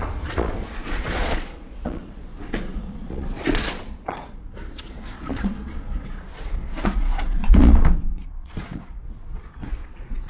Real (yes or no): no